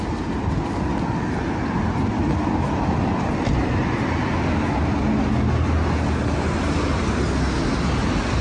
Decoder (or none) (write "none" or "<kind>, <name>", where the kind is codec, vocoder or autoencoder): none